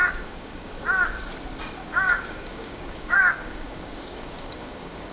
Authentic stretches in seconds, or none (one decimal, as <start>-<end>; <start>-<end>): 0.7-1.8